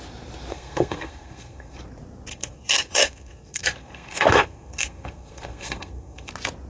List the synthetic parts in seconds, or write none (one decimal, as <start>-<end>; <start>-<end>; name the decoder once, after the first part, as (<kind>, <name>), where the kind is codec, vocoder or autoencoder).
0.5-1.8 (codec, SNAC); 2.3-6.3